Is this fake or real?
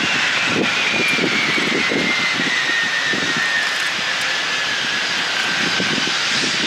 real